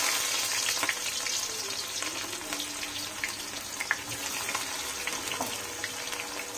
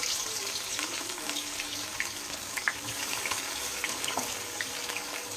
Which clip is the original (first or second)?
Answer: first